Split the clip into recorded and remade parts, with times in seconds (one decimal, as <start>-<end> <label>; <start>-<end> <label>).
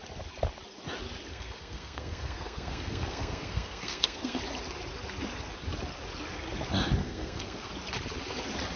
0.0-1.3 recorded; 1.3-4.4 remade; 4.4-7.0 recorded; 7.0-7.7 remade; 7.7-8.8 recorded